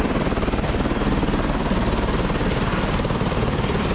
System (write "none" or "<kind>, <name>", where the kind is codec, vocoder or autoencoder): vocoder, BigVGAN v2